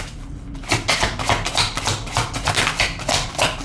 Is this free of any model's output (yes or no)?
no